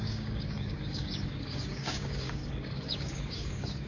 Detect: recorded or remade remade